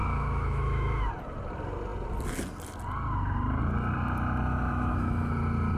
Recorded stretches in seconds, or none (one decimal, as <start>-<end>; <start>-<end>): 1.1-4.5; 5.3-5.8